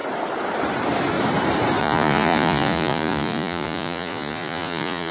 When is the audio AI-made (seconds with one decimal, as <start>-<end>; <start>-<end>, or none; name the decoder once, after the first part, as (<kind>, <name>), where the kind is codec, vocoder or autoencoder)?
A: 1.8-5.1 (vocoder, Vocos)